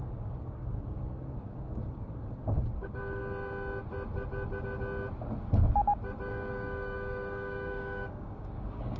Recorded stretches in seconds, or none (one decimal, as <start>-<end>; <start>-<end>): 3.2-6.3